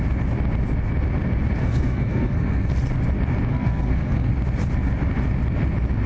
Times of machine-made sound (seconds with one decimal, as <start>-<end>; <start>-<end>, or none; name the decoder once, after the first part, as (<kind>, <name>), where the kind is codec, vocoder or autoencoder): 1.6-2.7 (codec, SNAC); 3.5-4.3